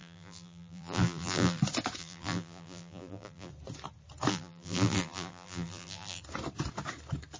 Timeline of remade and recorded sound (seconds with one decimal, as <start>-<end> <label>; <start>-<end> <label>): 0.0-1.6 remade; 1.6-2.0 recorded; 2.0-3.5 remade; 3.5-4.3 recorded; 4.3-6.2 remade; 6.2-7.4 recorded